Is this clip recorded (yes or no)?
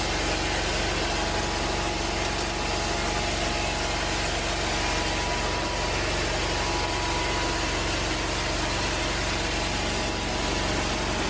yes